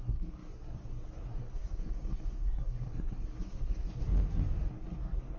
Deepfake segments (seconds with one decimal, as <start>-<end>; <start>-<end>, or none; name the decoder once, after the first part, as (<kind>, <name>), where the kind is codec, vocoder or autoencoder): 0.0-4.0 (codec, SNAC); 4.7-5.4